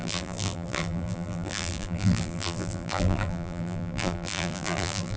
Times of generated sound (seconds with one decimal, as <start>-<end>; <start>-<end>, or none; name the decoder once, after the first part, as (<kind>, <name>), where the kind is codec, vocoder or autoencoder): 0.0-5.2 (vocoder, BigVGAN v2)